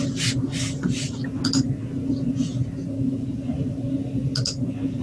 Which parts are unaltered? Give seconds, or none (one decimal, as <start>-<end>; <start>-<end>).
0.0-5.0